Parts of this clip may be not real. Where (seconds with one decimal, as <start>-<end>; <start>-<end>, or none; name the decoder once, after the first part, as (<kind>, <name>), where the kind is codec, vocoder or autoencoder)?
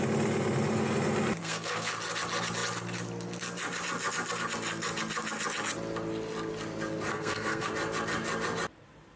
1.4-1.9 (codec, SNAC); 7.1-7.7